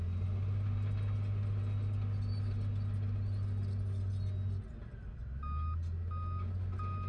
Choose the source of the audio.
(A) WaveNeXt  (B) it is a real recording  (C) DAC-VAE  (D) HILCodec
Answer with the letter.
B